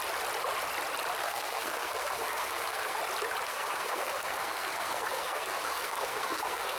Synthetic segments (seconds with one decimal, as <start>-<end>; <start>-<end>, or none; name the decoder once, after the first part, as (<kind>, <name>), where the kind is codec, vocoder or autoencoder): 1.2-3.0 (codec, SNAC); 3.5-6.8